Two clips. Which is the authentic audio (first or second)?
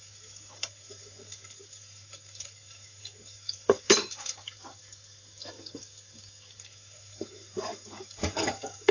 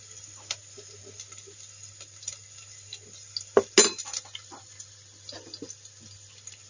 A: second